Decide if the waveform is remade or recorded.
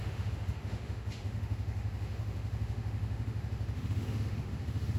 remade